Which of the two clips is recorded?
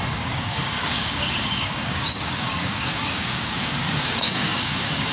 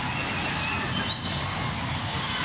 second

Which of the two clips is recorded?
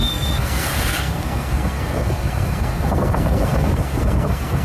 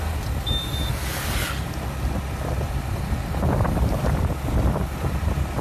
second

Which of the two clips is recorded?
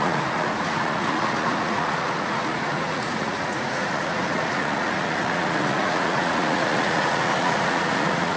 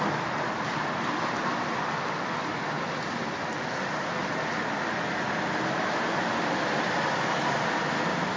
second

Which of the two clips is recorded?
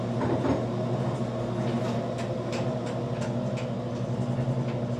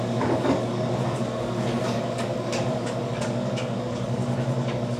first